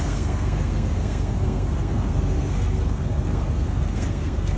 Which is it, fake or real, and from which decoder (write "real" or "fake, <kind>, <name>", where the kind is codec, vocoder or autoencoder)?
fake, codec, SNAC